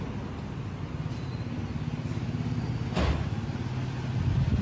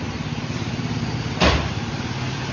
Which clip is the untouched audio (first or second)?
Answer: first